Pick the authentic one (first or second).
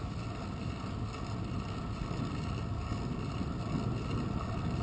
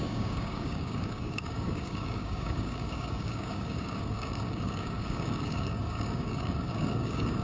first